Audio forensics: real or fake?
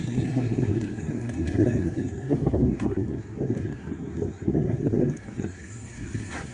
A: fake